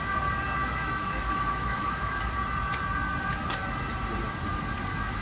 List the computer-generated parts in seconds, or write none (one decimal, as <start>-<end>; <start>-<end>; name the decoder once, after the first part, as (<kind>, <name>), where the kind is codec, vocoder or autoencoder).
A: 0.6-2.2 (autoencoder, DAC-VAE)